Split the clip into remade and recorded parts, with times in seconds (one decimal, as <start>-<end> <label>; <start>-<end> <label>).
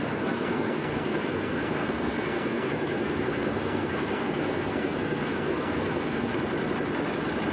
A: 0.0-6.3 remade; 6.3-7.5 recorded